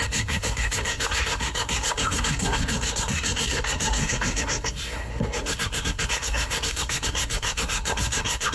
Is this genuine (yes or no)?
no